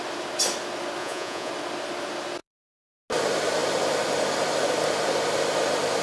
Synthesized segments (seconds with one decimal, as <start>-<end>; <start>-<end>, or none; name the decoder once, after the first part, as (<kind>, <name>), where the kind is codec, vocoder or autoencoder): 1.0-1.5 (vocoder, Vocos)